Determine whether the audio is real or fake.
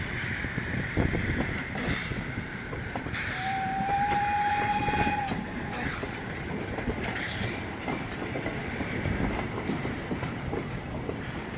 fake